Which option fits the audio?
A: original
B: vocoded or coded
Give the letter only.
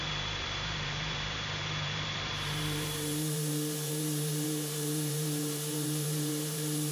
B